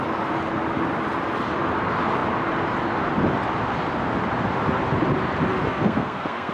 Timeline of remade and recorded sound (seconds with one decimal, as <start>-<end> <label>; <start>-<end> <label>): 0.0-5.7 recorded; 5.7-6.5 remade